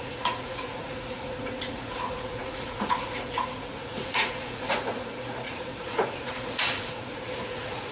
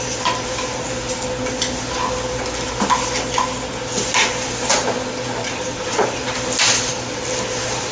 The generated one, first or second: first